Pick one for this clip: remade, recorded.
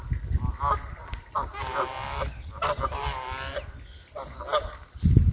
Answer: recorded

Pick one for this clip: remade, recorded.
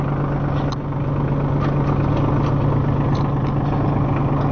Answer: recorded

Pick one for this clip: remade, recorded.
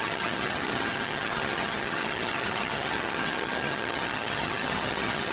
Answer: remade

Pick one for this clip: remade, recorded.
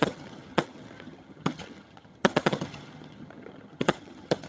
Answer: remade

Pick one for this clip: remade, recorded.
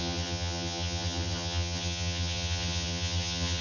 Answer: remade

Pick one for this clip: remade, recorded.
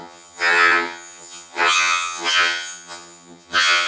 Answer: remade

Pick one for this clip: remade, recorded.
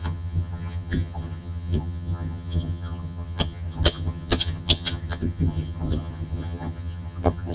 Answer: remade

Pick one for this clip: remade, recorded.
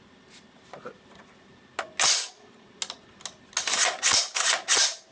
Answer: recorded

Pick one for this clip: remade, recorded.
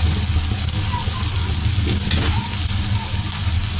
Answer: recorded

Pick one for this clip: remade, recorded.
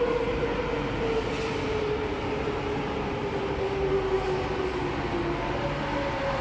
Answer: recorded